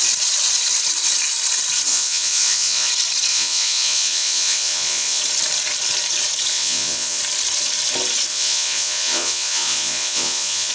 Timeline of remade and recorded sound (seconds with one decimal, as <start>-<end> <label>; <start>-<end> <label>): 0.0-1.9 recorded; 1.9-2.9 remade; 2.9-3.3 recorded; 3.3-5.2 remade; 5.2-6.5 recorded; 6.5-7.2 remade; 7.2-8.3 recorded; 8.3-10.7 remade